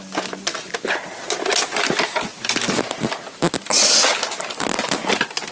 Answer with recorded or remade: recorded